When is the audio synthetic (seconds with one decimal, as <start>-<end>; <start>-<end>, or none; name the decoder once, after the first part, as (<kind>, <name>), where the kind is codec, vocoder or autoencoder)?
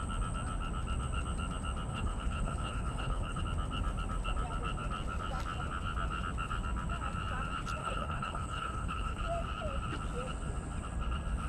1.9-3.4 (codec, HILCodec); 7.8-9.2